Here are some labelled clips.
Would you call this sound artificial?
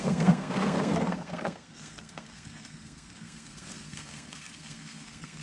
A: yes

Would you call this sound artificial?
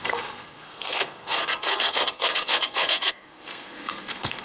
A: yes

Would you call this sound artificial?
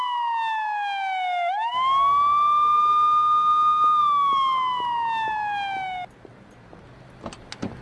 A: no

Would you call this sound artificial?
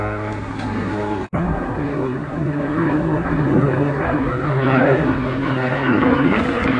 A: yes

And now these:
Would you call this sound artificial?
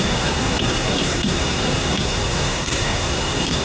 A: yes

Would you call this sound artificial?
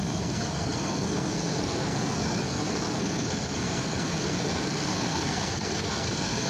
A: yes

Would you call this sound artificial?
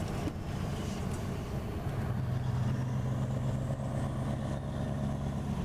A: no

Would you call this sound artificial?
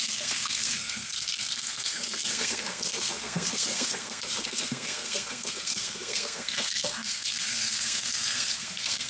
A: yes